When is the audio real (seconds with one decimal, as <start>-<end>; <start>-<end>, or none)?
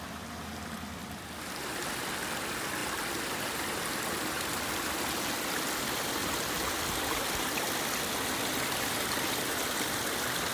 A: 0.0-10.5